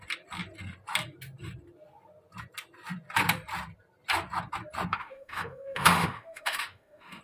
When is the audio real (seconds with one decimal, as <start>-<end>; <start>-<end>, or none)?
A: 0.0-4.9